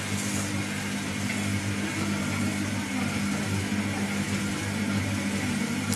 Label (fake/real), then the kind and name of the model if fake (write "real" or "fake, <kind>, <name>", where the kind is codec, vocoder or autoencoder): real